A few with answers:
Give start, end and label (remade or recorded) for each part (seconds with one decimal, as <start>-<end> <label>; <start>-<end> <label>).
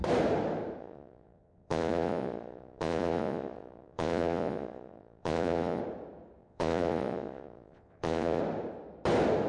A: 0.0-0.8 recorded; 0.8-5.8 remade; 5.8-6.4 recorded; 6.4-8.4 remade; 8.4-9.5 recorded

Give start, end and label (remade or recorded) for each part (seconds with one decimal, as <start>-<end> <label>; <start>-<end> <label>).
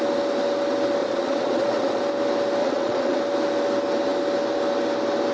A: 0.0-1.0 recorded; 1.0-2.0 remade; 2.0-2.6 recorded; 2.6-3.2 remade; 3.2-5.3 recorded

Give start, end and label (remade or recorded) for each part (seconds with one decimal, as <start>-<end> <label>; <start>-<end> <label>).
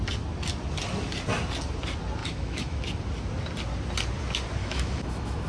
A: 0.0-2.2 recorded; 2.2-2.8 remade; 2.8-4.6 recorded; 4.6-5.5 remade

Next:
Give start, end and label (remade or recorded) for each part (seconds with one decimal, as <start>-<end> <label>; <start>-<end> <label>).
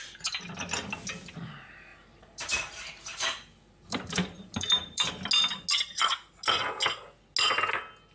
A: 0.0-1.9 recorded; 1.9-5.1 remade; 5.1-8.1 recorded